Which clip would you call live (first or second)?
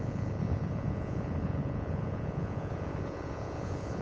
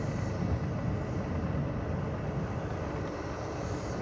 second